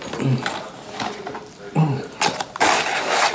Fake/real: real